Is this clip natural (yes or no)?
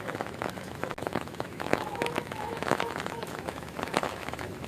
no